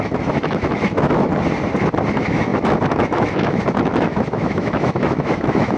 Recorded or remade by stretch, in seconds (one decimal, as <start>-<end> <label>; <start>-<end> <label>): 0.0-1.3 remade; 1.3-2.1 recorded; 2.1-5.8 remade